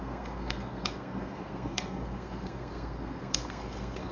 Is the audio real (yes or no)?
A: no